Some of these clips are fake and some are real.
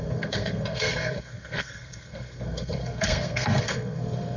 fake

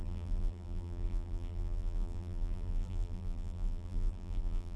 fake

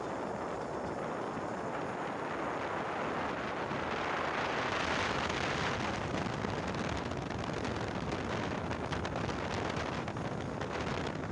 real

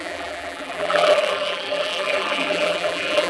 fake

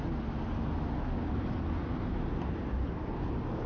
real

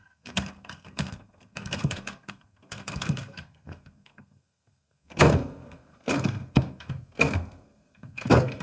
fake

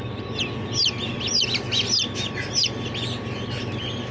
real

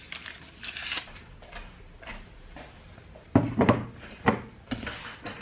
real